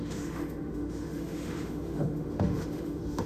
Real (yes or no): no